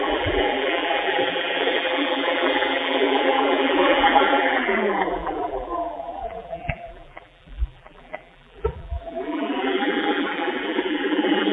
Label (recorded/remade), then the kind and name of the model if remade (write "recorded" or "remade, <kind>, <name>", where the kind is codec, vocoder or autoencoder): remade, vocoder, BigVGAN v2